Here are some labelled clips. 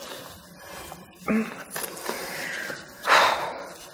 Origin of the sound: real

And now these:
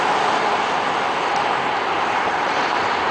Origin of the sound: real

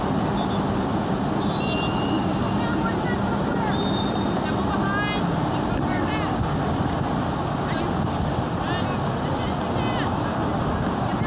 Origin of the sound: real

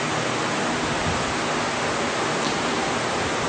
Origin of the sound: real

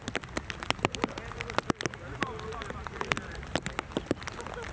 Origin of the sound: real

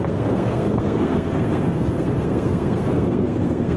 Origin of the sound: fake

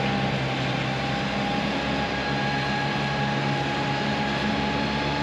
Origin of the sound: real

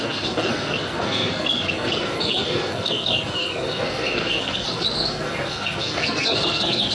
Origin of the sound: fake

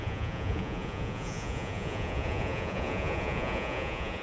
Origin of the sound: fake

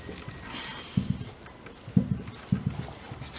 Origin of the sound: real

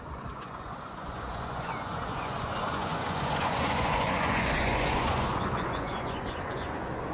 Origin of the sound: fake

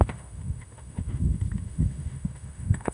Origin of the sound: fake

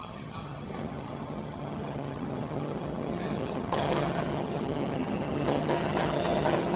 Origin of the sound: fake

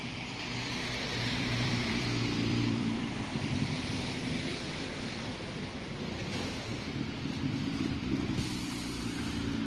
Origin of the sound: fake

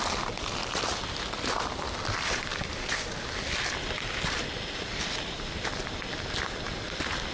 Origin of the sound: real